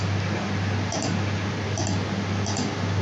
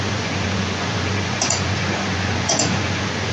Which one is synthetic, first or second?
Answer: second